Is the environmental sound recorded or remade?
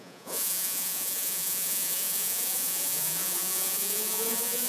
remade